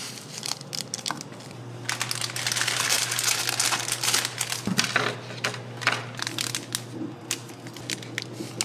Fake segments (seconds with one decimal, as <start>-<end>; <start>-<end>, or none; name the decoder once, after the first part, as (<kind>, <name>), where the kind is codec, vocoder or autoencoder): 0.0-0.7 (vocoder, BigVGAN v2)